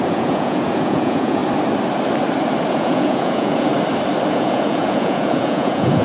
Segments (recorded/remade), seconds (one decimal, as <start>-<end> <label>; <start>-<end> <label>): 0.0-1.4 remade; 1.4-2.7 recorded; 2.7-3.7 remade; 3.7-4.3 recorded; 4.3-6.0 remade